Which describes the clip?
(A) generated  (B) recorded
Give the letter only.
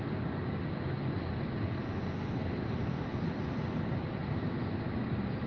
B